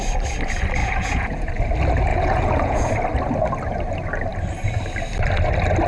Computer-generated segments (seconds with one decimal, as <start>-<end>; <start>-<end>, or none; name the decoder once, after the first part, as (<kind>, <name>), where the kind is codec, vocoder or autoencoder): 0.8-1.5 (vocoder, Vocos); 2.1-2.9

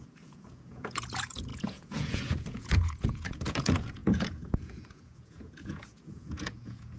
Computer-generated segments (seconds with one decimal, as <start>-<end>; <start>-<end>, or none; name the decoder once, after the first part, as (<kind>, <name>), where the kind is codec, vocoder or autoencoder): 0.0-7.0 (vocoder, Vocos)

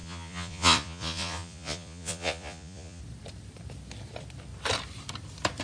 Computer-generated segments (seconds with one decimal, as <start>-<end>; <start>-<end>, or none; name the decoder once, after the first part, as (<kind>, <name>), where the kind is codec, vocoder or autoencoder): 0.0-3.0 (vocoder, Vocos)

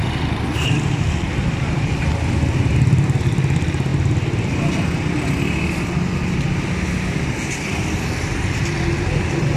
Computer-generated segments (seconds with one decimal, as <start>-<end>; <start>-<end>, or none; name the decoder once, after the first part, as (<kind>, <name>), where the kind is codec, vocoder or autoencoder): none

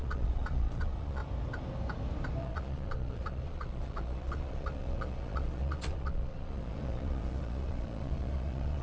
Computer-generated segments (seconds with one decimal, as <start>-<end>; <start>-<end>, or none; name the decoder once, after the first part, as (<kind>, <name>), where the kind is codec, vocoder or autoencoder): 0.0-1.2 (vocoder, Vocos); 2.4-8.8

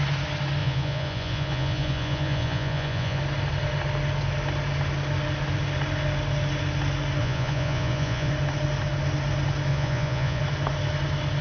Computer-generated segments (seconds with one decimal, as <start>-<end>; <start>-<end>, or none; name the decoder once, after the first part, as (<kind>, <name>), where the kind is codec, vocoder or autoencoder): 0.6-3.2 (vocoder, Vocos); 7.2-8.3; 9.7-10.4

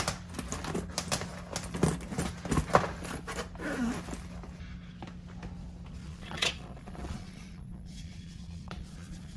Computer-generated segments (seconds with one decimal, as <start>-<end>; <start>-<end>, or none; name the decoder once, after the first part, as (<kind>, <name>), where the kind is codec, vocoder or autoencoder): 6.0-9.4 (vocoder, Vocos)